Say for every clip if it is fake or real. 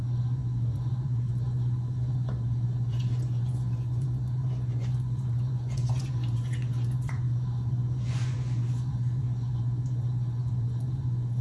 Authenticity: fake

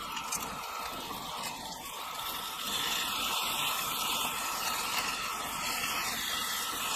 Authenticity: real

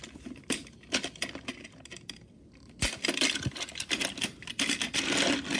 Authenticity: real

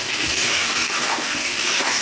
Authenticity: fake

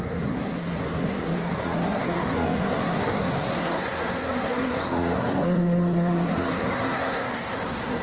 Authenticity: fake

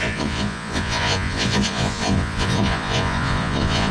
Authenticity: fake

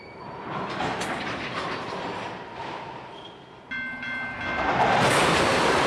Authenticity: real